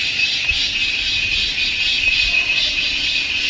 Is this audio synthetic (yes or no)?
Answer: no